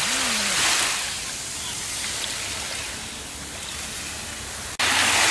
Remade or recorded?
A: recorded